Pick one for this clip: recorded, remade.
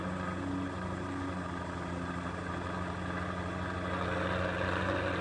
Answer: recorded